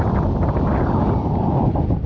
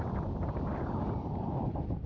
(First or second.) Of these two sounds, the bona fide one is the first